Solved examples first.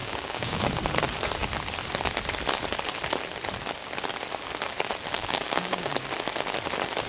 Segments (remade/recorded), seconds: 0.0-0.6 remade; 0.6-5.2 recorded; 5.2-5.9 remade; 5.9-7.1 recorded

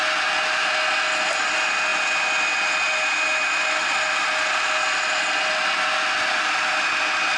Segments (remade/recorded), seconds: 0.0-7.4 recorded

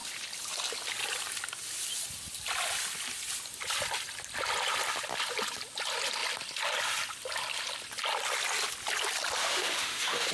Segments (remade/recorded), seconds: 0.0-9.4 recorded; 9.4-10.3 remade

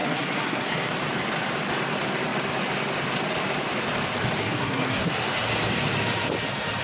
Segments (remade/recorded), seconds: 0.0-0.9 remade; 0.9-4.4 recorded; 4.4-5.0 remade; 5.0-6.8 recorded

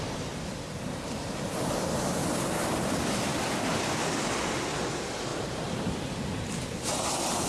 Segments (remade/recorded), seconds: 0.0-7.5 recorded

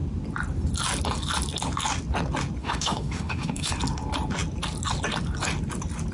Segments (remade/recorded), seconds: 0.0-2.6 recorded; 2.6-3.7 remade; 3.7-6.1 recorded

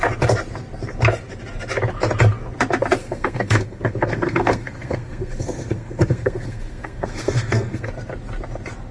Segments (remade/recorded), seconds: 0.0-3.0 recorded; 3.0-7.9 remade; 7.9-8.9 recorded